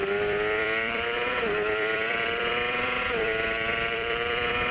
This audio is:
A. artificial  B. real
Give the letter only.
A